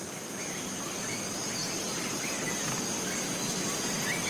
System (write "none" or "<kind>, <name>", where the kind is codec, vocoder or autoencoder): none